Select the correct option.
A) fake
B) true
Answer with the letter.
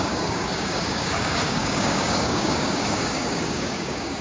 A